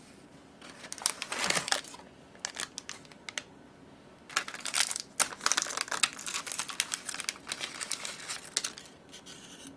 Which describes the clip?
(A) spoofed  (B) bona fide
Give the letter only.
B